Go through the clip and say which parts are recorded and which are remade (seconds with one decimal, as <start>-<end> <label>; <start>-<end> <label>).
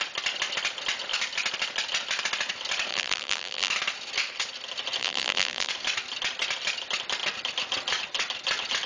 0.0-2.9 recorded; 2.9-3.7 remade; 3.7-5.0 recorded; 5.0-5.7 remade; 5.7-8.9 recorded